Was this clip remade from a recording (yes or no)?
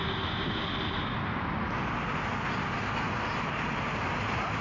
no